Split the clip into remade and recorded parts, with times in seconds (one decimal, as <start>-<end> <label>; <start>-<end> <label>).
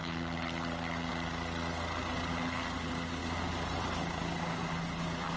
0.0-5.4 recorded